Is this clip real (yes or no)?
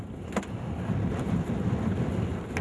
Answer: yes